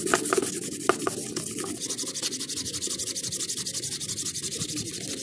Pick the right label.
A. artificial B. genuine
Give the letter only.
B